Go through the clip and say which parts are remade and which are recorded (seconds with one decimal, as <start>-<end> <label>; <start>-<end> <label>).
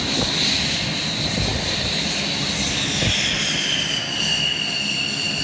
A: 0.0-5.4 recorded